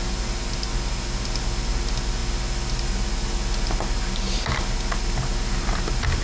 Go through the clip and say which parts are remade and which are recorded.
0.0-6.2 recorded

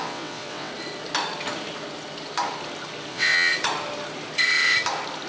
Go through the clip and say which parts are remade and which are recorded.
0.0-0.7 remade; 0.7-3.1 recorded; 3.1-3.5 remade; 3.5-5.3 recorded

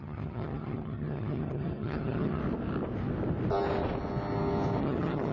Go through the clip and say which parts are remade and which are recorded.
0.0-2.4 remade; 2.4-4.8 recorded; 4.8-5.3 remade

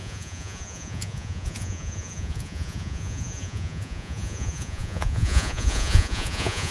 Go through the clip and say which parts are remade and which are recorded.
0.0-6.7 remade